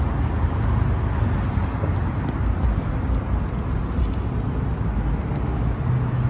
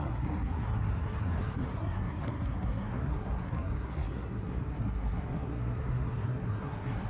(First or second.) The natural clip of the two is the first